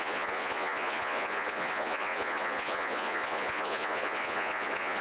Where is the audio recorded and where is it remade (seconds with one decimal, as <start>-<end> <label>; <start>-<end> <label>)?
0.0-5.0 remade